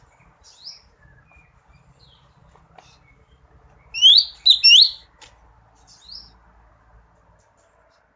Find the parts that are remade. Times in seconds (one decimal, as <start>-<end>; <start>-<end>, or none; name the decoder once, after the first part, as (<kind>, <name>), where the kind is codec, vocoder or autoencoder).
none